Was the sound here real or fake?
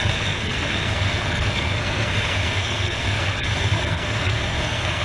fake